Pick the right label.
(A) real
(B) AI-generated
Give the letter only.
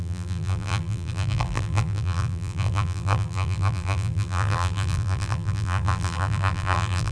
B